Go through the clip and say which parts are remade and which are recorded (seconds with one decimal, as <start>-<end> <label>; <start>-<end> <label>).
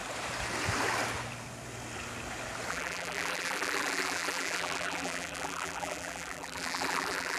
0.0-2.7 recorded; 2.7-7.4 remade